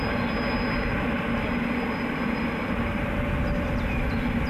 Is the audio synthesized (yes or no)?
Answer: no